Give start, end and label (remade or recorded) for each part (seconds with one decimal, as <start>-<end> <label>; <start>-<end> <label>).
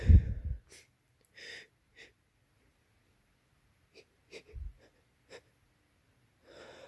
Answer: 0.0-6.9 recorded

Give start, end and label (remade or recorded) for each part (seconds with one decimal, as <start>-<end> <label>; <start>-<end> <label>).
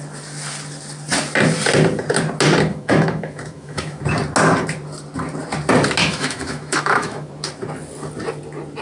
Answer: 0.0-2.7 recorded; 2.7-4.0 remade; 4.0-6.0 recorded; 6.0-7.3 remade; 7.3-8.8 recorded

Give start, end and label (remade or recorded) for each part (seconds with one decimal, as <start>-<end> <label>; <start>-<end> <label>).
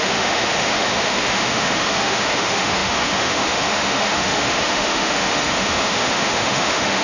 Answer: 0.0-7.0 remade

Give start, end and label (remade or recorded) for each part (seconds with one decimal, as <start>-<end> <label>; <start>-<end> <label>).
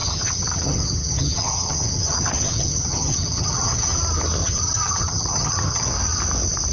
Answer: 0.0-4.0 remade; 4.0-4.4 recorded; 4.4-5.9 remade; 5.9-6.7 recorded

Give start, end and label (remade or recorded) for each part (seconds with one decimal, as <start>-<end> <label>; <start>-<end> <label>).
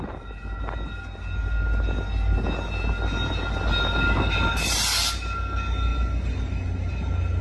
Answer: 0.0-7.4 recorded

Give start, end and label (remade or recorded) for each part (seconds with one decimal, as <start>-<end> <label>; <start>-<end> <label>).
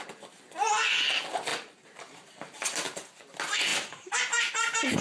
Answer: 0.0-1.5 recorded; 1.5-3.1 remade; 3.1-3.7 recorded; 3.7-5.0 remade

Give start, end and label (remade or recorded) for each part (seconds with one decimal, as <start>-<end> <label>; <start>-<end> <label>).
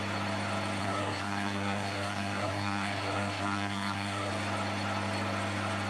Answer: 0.0-0.8 recorded; 0.8-4.3 remade; 4.3-5.9 recorded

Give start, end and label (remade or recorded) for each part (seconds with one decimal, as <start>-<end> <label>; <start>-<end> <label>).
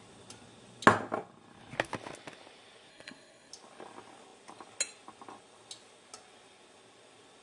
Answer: 0.0-2.9 recorded; 2.9-3.5 remade; 3.5-7.4 recorded